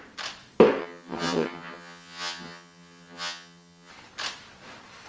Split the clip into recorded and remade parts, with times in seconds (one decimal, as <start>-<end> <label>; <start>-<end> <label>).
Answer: 0.0-0.8 recorded; 0.8-3.9 remade; 3.9-5.1 recorded